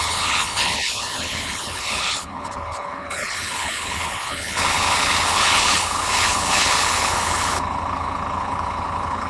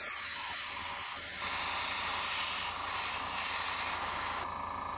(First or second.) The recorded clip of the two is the second